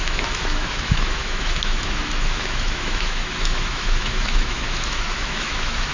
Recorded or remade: remade